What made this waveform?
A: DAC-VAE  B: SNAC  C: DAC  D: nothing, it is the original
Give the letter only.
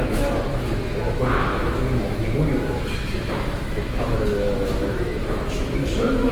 A